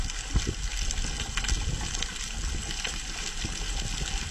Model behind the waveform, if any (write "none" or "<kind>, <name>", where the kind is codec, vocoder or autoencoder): none